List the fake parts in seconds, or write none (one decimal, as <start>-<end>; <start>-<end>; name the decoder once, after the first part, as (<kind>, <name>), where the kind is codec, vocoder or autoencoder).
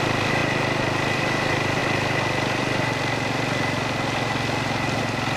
none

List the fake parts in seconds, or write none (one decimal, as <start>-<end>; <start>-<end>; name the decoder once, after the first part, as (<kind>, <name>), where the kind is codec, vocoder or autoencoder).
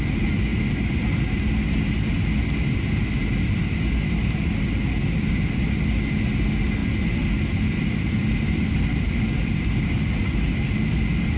6.8-9.9 (vocoder, BigVGAN v2)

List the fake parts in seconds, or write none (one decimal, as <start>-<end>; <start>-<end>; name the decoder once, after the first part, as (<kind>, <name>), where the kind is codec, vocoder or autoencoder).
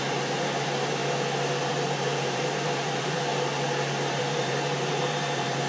0.0-1.0 (vocoder, BigVGAN v2); 1.7-3.3; 4.2-5.7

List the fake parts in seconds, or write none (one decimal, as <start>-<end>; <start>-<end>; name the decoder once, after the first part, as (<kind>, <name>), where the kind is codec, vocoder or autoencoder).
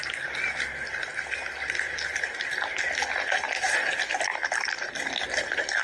4.3-5.1 (vocoder, BigVGAN v2)